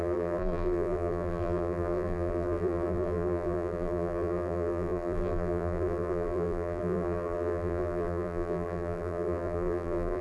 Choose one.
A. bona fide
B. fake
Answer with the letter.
B